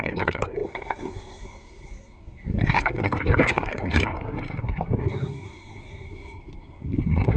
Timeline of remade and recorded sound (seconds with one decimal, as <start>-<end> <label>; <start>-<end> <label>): 0.0-7.4 remade